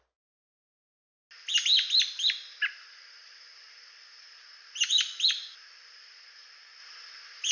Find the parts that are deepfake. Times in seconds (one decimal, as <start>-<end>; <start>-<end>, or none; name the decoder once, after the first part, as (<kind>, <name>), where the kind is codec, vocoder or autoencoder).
none